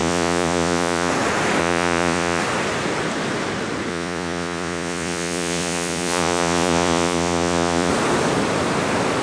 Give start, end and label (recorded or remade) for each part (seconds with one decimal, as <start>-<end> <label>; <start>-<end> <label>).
0.0-1.1 remade; 1.1-1.6 recorded; 1.6-2.4 remade; 2.4-3.9 recorded; 3.9-7.9 remade; 7.9-9.2 recorded